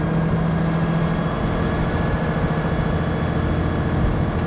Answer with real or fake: real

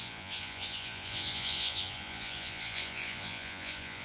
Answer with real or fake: fake